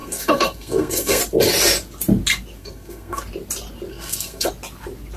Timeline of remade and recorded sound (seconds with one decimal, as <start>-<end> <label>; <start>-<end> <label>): 0.0-1.2 remade; 1.2-2.6 recorded; 2.6-3.2 remade; 3.2-3.9 recorded; 3.9-4.5 remade; 4.5-5.2 recorded